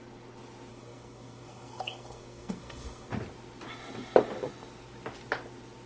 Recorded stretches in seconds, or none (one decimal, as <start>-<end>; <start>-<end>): 0.0-0.7; 3.1-5.9